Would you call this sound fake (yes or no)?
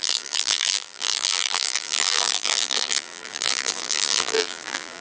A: yes